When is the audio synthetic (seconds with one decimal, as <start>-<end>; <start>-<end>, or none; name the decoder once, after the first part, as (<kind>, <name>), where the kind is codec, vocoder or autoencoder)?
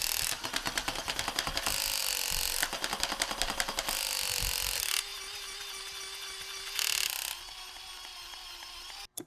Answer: none